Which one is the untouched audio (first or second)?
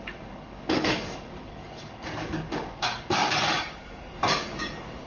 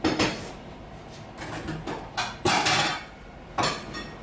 second